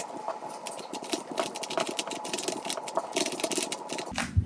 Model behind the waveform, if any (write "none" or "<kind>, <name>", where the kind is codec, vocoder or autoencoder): none